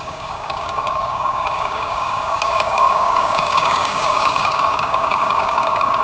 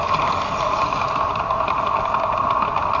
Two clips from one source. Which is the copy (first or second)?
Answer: first